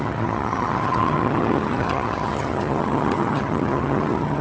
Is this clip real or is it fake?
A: fake